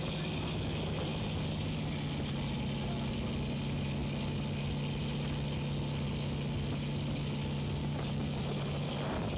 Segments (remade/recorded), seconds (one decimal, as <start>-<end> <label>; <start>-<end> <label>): 0.0-7.8 recorded; 7.8-8.4 remade; 8.4-9.4 recorded